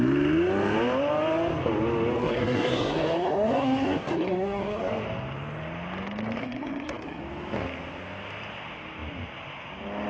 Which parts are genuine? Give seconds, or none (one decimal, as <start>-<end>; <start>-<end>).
0.0-2.2; 4.9-6.4; 7.2-10.1